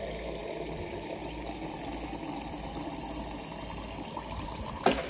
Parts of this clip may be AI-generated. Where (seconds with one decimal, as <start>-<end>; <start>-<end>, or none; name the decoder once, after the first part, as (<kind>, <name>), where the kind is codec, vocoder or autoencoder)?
none